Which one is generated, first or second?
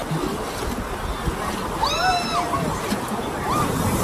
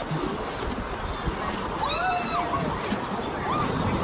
second